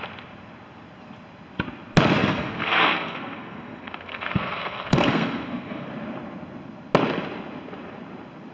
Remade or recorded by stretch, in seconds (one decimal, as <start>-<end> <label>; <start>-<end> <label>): 0.0-2.2 recorded; 2.2-5.9 remade; 5.9-8.5 recorded